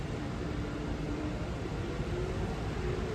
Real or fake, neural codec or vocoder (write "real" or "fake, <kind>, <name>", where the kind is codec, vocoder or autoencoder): fake, vocoder, BigVGAN v2